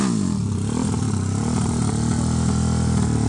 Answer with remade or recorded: recorded